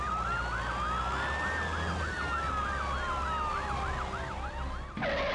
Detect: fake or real real